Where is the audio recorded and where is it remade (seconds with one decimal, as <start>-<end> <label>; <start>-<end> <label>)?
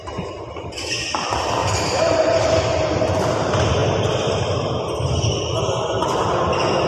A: 0.0-1.6 recorded; 1.6-2.6 remade; 2.6-6.9 recorded